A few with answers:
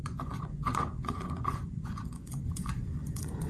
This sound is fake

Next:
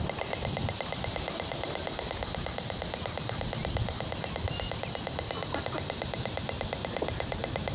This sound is real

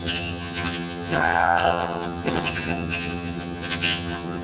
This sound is fake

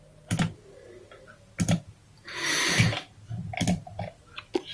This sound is real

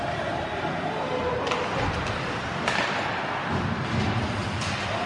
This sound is real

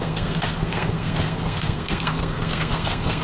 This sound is fake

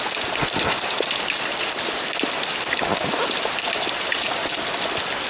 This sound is fake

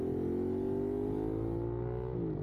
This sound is real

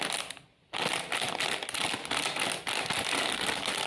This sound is real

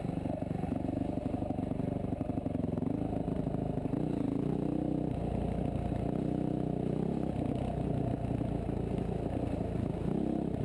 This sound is real